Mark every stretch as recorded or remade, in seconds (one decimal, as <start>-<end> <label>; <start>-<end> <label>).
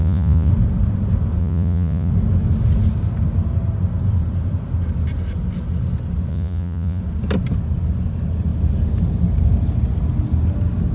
0.0-0.5 remade; 0.5-1.4 recorded; 1.4-2.1 remade; 2.1-6.3 recorded; 6.3-7.0 remade; 7.0-10.9 recorded